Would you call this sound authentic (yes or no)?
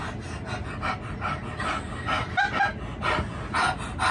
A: yes